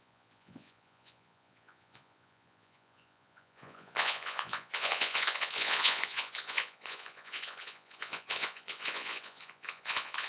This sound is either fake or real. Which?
fake